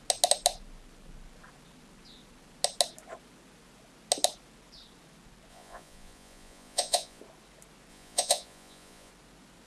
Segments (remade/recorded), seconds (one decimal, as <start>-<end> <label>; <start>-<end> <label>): 0.0-5.5 recorded; 5.5-7.2 remade; 7.2-7.9 recorded; 7.9-9.1 remade; 9.1-9.7 recorded